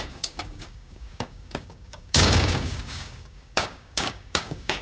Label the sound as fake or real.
fake